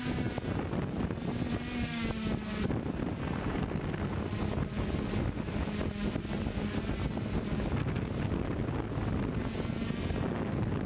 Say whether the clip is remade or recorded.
recorded